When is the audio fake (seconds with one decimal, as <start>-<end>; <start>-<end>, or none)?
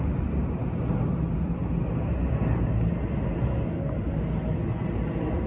none